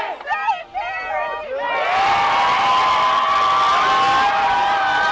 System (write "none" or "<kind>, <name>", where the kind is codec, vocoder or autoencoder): none